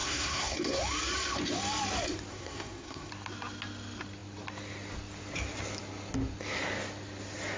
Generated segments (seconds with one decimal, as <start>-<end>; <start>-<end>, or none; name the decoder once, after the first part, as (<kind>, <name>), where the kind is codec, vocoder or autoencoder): 0.0-0.8 (codec, SNAC); 2.3-3.1